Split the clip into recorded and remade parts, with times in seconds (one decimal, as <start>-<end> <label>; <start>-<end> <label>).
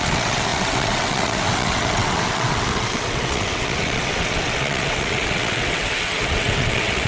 0.0-7.1 remade